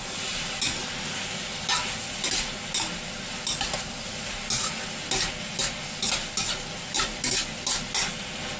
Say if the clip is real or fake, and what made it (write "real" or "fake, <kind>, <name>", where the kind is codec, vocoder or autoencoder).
real